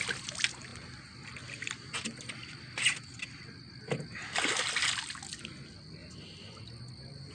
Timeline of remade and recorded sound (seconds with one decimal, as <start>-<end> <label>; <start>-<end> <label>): 0.0-7.3 recorded